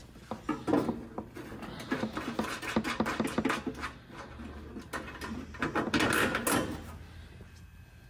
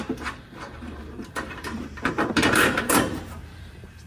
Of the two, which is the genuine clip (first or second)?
first